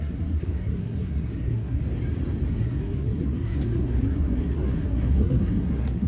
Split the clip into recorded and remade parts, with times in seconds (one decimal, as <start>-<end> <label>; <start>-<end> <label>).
0.0-1.8 remade; 1.8-2.5 recorded; 2.5-6.1 remade